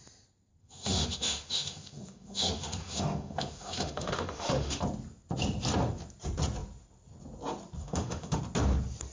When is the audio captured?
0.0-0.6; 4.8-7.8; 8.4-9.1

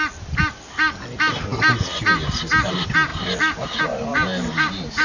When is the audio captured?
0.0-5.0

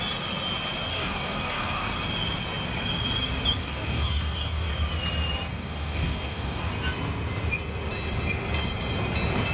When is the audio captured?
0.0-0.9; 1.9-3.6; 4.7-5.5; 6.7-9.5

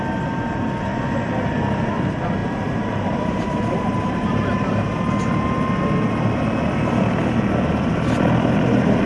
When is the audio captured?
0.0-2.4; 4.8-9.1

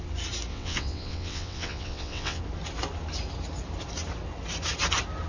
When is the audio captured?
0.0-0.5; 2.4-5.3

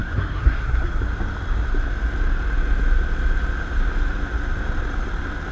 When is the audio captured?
1.0-5.5